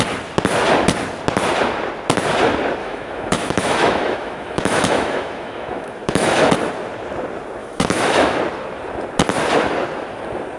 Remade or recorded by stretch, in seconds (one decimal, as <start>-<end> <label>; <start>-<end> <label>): 0.0-2.8 recorded; 2.8-6.5 remade; 6.5-7.6 recorded; 7.6-8.4 remade; 8.4-10.6 recorded